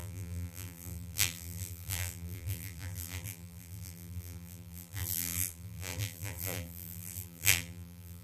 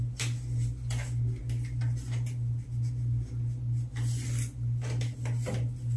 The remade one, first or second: first